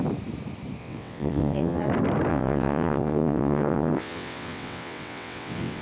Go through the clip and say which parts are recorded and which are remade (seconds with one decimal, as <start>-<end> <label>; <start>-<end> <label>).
0.0-0.8 recorded; 0.8-1.9 remade; 1.9-2.3 recorded; 2.3-5.8 remade